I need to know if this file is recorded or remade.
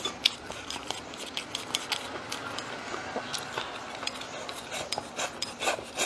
recorded